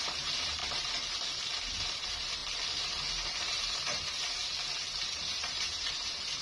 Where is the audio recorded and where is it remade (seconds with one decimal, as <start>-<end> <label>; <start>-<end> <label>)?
0.0-0.6 remade; 0.6-1.9 recorded; 1.9-2.4 remade; 2.4-3.1 recorded; 3.1-4.4 remade; 4.4-5.2 recorded; 5.2-6.4 remade